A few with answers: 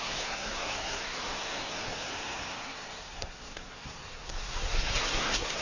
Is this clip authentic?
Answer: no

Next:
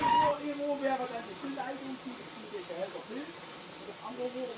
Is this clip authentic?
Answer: yes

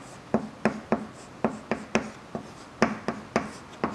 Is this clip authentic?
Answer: yes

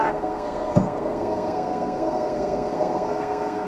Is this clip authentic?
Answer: no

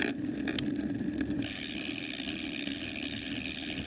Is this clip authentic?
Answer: yes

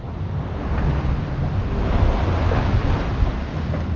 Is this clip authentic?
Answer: yes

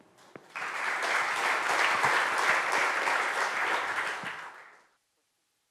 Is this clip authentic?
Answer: yes